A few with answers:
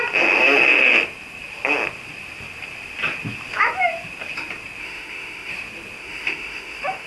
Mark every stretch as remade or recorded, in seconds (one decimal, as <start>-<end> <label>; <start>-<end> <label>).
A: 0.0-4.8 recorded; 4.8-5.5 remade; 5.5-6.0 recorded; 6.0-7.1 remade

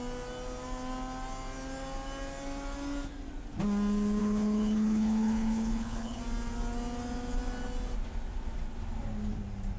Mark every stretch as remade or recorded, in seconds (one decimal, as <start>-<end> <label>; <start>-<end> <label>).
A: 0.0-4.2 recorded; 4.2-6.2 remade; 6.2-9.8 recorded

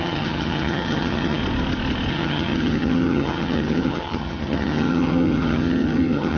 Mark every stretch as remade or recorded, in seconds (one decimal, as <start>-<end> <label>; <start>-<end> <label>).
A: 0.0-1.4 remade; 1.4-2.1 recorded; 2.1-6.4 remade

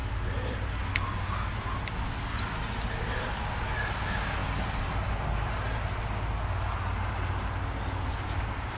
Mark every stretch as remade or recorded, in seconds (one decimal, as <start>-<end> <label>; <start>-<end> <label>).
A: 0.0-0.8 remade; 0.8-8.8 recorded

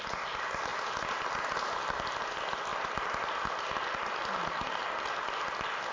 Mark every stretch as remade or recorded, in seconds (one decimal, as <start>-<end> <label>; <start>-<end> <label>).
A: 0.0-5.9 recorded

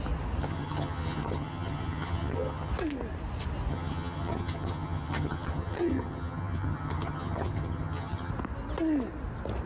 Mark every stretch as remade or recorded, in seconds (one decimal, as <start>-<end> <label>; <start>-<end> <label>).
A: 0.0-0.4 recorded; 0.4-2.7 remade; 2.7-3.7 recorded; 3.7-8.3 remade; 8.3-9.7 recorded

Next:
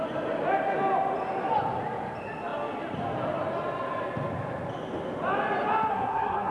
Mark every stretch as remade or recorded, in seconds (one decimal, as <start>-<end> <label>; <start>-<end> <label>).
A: 0.0-5.9 recorded; 5.9-6.5 remade

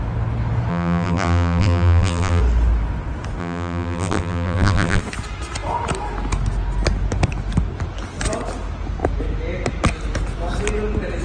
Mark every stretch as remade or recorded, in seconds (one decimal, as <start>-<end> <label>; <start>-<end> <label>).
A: 0.0-0.7 recorded; 0.7-2.4 remade; 2.4-3.4 recorded; 3.4-5.0 remade; 5.0-11.2 recorded